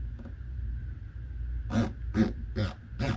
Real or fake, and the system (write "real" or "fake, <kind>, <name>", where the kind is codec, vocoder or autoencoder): fake, vocoder, BigVGAN v2